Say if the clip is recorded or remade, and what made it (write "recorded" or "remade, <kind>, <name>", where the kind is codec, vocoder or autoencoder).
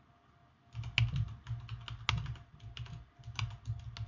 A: recorded